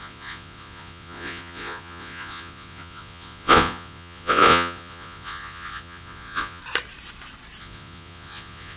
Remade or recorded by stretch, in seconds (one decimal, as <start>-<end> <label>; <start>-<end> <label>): 0.0-6.6 remade; 6.6-7.6 recorded; 7.6-8.8 remade